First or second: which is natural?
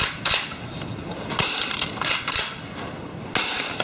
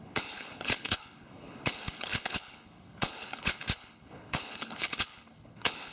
first